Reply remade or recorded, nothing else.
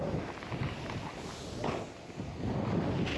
recorded